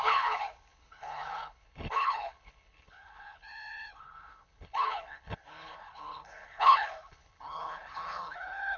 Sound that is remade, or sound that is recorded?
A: remade